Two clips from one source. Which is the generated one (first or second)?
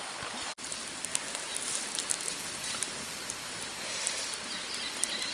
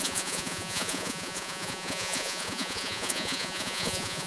second